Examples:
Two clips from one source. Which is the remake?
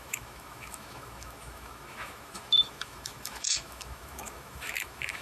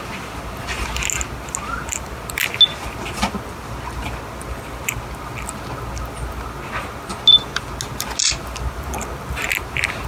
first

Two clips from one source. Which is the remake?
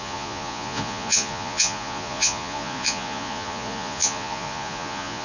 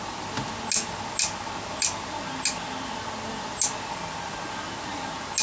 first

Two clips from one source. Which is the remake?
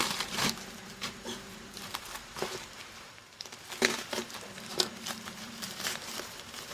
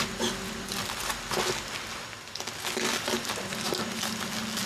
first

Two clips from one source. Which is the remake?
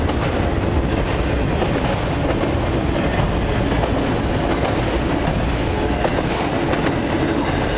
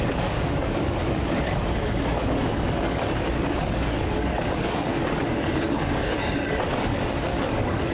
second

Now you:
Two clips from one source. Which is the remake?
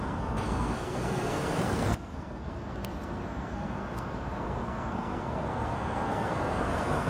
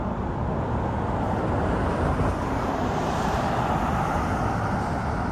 first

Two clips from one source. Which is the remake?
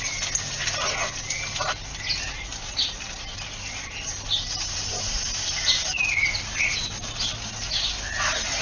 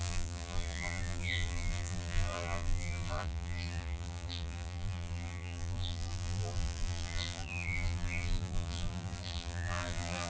second